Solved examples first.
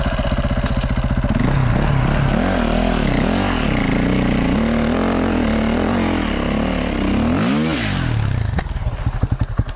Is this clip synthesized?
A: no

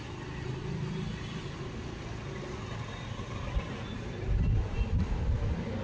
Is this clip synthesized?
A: no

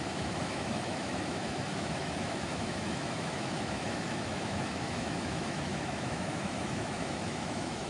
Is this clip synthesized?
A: yes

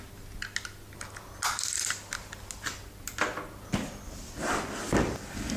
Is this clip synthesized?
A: no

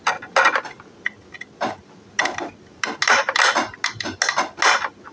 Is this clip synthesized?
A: no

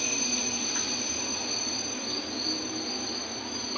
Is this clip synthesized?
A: no